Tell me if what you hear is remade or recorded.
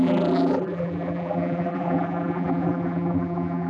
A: remade